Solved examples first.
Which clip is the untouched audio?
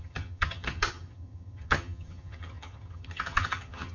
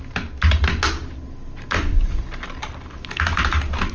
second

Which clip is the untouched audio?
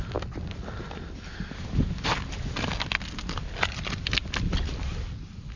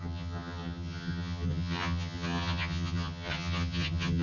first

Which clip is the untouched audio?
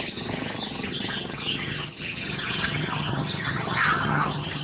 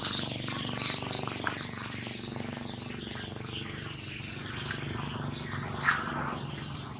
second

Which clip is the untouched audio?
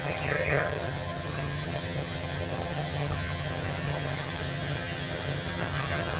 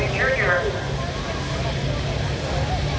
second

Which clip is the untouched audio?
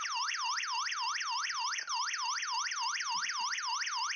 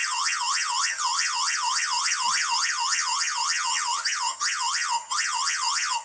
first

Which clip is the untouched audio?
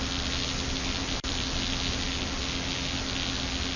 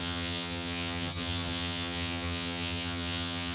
first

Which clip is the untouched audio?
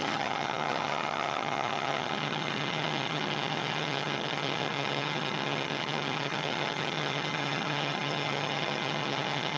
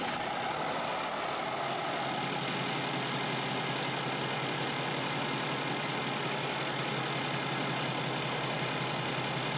second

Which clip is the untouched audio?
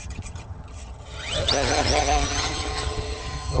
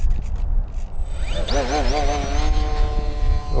second